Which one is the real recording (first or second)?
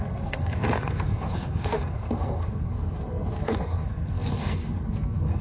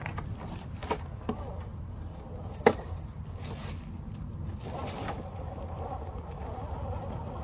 second